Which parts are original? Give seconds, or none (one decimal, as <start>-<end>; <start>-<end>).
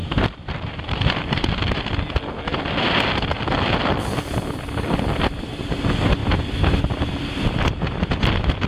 1.5-8.7